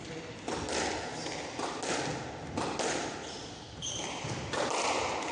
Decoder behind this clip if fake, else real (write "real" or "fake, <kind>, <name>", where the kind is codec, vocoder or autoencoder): real